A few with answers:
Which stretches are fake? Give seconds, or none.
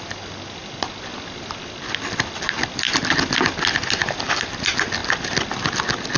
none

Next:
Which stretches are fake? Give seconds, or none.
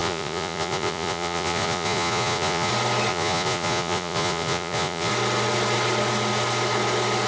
0.0-2.7 (vocoder, Vocos); 3.1-5.1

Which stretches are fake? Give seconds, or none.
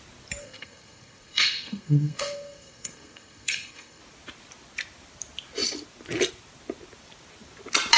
0.4-4.0 (codec, SNAC)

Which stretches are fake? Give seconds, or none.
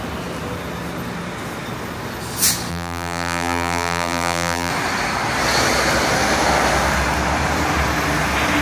2.7-4.7 (vocoder, BigVGAN v2)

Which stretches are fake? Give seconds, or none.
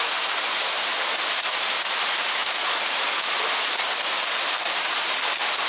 none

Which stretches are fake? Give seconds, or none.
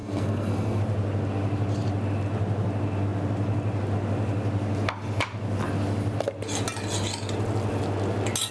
0.0-0.8 (codec, SNAC)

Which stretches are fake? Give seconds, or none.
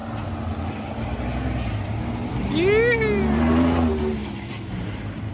none